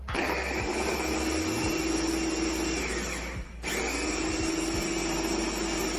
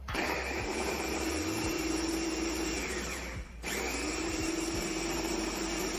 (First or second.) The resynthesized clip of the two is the second